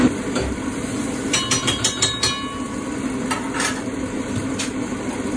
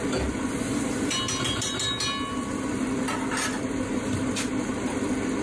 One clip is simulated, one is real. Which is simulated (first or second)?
first